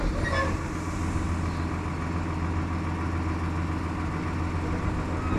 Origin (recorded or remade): recorded